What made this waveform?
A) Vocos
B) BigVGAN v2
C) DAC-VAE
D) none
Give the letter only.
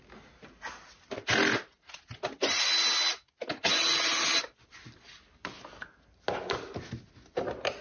D